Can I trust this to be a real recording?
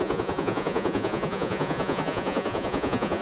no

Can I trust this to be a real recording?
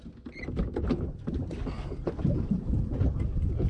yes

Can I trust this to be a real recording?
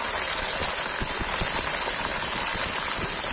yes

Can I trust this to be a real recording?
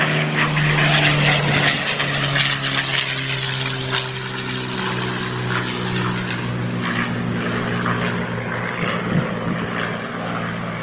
yes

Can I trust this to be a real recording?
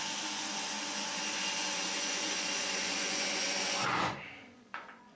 no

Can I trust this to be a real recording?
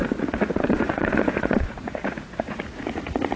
no